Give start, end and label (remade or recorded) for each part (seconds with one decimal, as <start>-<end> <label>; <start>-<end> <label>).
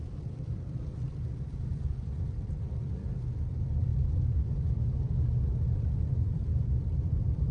0.0-3.9 remade; 3.9-7.0 recorded; 7.0-7.5 remade